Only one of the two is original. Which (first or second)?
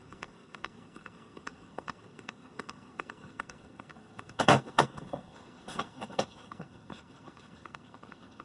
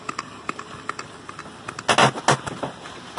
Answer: second